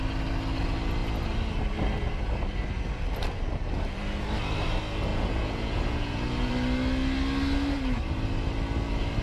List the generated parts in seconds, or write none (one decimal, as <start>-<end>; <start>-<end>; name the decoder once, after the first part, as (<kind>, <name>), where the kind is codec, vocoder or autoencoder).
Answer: 5.1-6.5 (vocoder, Vocos)